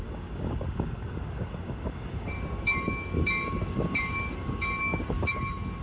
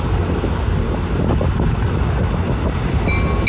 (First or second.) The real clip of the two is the second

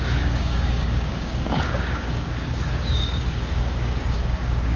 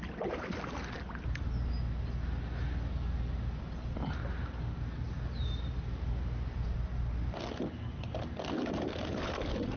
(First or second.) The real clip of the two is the second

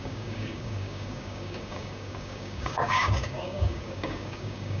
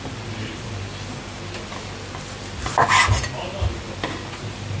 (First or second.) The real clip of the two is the second